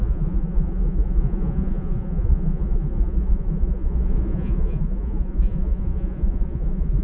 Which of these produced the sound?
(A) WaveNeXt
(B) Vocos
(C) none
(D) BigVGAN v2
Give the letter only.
B